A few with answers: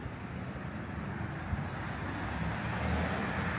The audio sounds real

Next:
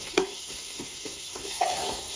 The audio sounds fake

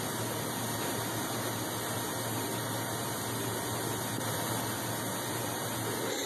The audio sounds real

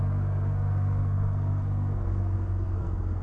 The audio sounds fake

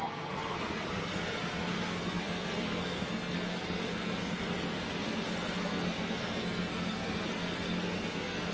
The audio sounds fake